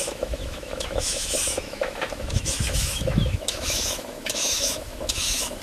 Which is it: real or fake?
fake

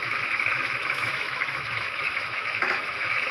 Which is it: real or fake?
fake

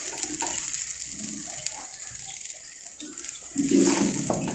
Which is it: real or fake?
real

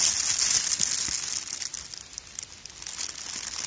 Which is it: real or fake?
real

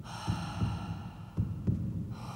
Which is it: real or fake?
real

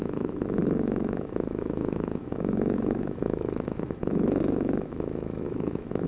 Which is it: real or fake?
fake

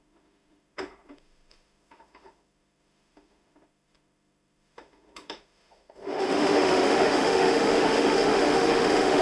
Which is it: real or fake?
fake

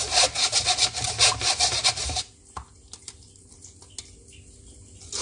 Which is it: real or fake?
real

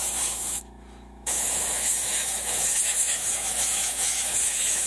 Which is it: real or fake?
fake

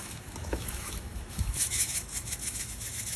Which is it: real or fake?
fake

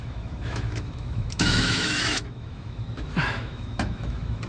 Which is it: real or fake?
fake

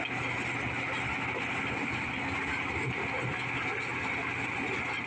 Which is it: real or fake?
real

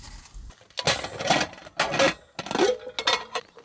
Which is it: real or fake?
real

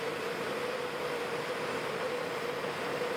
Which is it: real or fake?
real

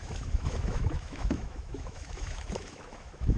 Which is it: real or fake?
fake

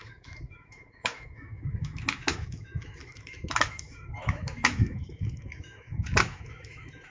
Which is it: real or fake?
fake